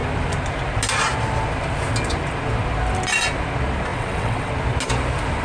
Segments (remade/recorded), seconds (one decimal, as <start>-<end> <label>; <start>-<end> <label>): 0.0-3.9 recorded; 3.9-4.5 remade; 4.5-5.4 recorded